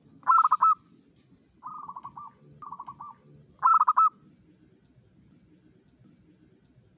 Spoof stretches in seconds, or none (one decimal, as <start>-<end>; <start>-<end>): none